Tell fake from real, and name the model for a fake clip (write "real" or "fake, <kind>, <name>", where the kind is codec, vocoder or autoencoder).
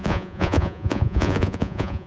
fake, vocoder, Vocos